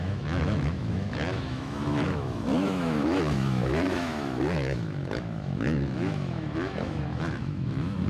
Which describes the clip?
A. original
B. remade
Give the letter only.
B